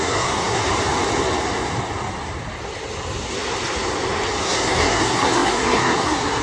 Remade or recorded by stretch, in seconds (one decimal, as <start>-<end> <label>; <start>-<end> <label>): 0.0-0.6 remade; 0.6-4.4 recorded; 4.4-6.4 remade